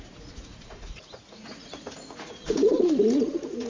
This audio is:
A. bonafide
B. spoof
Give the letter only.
B